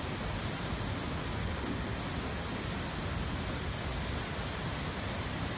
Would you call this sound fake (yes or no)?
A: no